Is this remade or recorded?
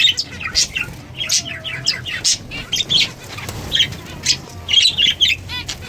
recorded